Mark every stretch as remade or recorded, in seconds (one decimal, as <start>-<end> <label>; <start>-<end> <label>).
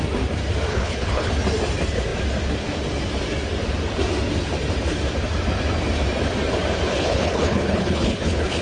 0.0-0.7 recorded; 0.7-1.3 remade; 1.3-6.9 recorded; 6.9-8.6 remade